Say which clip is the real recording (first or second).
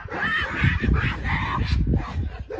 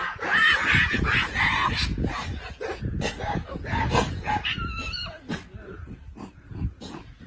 first